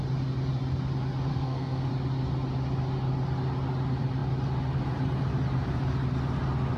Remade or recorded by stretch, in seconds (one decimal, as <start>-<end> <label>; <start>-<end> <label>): 0.0-1.3 recorded; 1.3-1.9 remade; 1.9-6.8 recorded